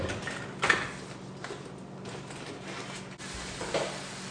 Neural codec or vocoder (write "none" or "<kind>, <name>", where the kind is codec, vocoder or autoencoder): none